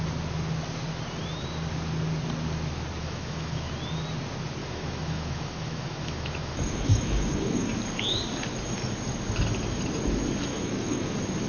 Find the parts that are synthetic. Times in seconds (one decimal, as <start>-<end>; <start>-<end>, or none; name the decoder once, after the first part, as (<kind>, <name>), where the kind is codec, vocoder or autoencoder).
3.0-3.7 (autoencoder, DAC-VAE); 4.6-7.7; 10.5-11.1